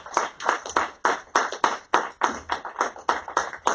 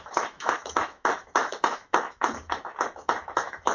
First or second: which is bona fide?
first